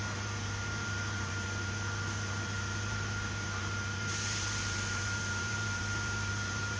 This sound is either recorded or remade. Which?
remade